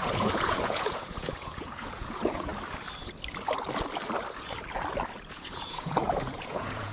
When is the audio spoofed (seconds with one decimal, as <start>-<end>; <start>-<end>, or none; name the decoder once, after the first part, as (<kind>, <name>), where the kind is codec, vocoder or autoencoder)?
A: 0.0-2.5 (vocoder, Vocos); 5.3-6.9